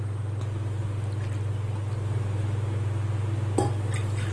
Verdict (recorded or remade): recorded